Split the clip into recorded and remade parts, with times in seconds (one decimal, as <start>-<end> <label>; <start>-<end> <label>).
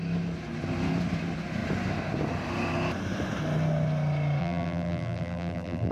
0.0-4.4 recorded; 4.4-5.9 remade